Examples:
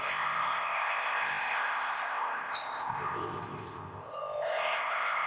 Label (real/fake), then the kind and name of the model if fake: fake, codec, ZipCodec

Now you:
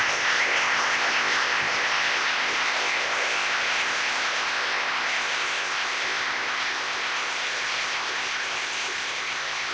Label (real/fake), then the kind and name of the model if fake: fake, codec, ZipCodec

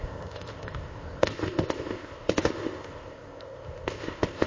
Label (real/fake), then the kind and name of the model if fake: fake, codec, ZipCodec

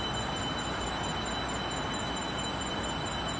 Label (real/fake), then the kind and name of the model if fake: real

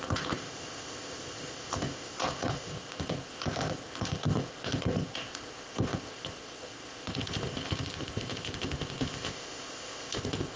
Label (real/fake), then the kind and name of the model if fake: fake, codec, ZipCodec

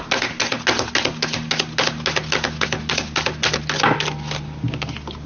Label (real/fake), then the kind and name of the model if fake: real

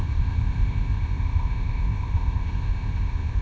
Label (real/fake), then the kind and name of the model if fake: fake, codec, ZipCodec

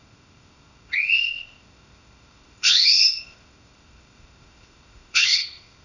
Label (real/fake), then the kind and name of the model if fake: fake, codec, ZipCodec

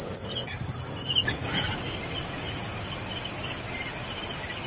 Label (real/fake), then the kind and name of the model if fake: real